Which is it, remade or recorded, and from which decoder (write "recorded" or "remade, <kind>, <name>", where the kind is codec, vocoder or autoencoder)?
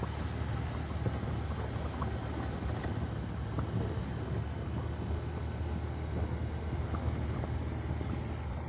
recorded